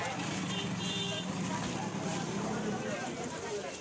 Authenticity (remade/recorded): recorded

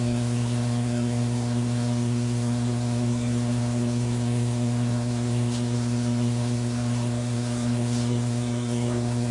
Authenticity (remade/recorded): remade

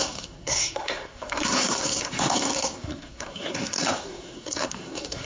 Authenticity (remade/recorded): remade